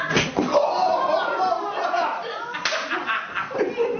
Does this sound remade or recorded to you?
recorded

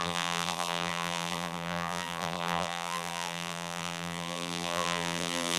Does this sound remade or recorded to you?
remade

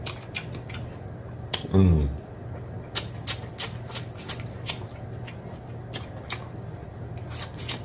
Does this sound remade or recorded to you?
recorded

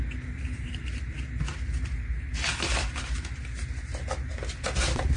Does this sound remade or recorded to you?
recorded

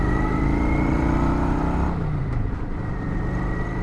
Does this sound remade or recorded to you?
remade